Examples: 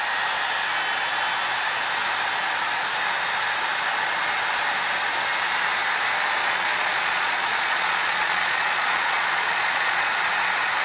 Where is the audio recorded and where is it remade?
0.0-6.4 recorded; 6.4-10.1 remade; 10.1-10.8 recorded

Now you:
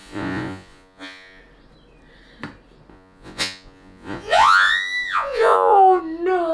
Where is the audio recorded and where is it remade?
0.0-1.4 remade; 1.4-2.9 recorded; 2.9-6.0 remade; 6.0-6.5 recorded

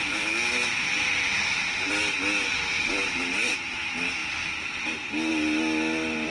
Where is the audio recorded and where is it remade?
0.0-6.3 recorded

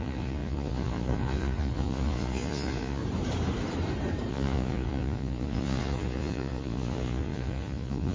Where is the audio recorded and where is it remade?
0.0-3.0 remade; 3.0-4.3 recorded; 4.3-8.1 remade